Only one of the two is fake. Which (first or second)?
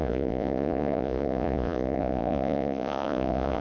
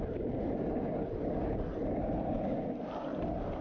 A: first